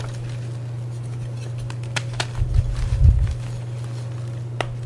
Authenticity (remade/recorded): recorded